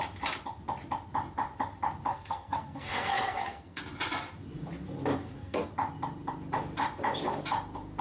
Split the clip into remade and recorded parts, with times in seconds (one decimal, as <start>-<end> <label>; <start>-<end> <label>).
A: 0.0-2.1 recorded; 2.1-3.8 remade; 3.8-5.2 recorded; 5.2-5.7 remade; 5.7-8.0 recorded